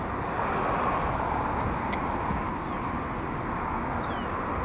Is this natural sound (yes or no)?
yes